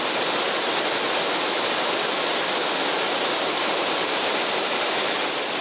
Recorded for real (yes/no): yes